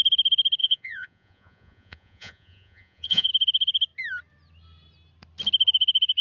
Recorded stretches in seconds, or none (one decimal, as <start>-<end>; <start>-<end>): 0.0-0.6; 3.3-6.2

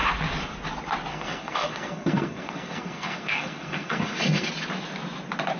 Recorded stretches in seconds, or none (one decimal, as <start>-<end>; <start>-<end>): 0.0-1.1; 4.5-5.6

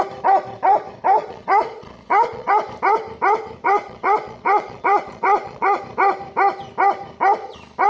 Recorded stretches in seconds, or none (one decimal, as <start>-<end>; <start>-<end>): 0.0-1.2; 2.5-3.6; 5.8-7.9

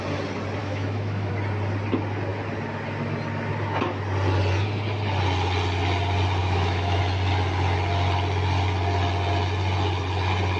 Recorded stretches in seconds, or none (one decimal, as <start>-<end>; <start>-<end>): 0.0-0.6; 1.3-6.4; 7.0-10.6

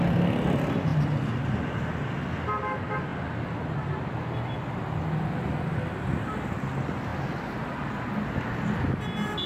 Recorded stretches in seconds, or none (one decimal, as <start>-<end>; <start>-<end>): 0.0-9.5

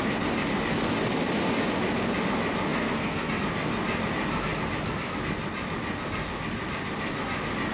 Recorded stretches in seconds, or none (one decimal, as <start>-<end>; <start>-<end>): 0.0-2.7; 3.3-7.7

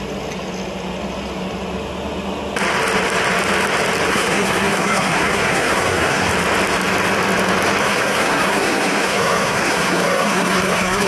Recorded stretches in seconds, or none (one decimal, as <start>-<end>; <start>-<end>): 0.0-4.1; 6.3-7.8

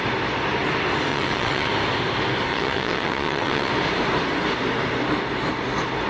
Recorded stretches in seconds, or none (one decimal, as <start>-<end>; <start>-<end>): 0.0-1.1; 1.7-2.5; 3.7-6.1